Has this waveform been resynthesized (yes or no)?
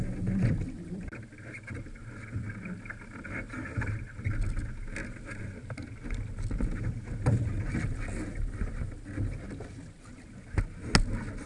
no